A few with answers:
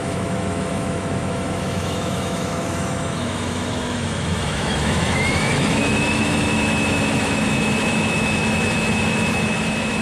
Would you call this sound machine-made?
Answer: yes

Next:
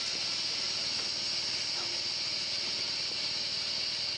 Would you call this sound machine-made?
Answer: no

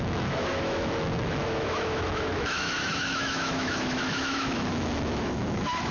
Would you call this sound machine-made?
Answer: yes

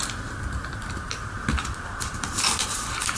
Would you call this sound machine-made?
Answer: yes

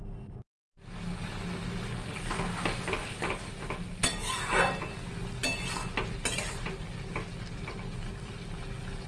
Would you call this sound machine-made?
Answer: no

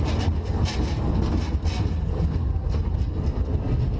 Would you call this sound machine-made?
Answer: no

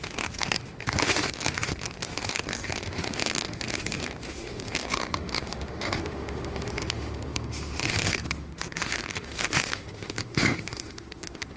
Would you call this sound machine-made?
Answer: yes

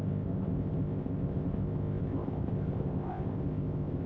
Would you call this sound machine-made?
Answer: yes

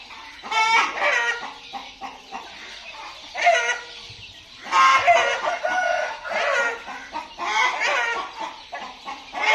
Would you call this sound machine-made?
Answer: no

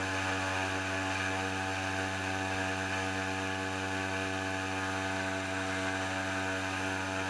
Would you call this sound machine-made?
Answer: no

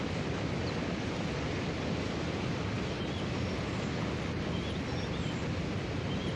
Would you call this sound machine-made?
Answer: no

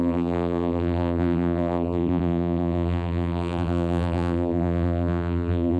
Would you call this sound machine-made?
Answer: yes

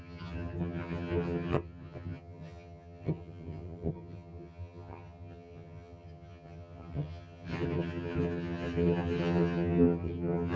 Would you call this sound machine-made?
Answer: yes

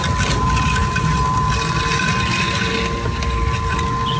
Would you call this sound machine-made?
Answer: no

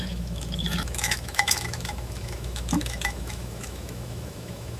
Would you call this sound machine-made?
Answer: yes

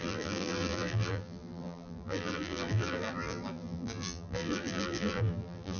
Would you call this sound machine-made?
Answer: yes